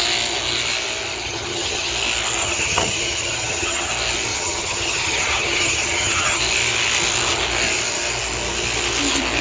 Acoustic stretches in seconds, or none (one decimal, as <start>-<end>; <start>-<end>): 0.0-1.2; 1.9-2.4; 3.9-4.3; 6.4-9.4